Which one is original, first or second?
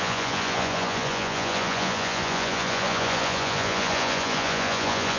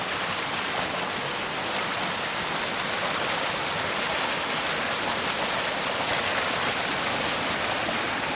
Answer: second